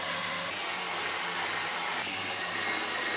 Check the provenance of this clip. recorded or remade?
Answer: recorded